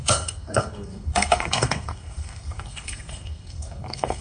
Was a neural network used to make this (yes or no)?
yes